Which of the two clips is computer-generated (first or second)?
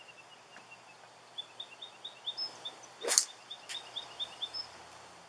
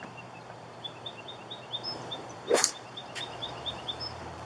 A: second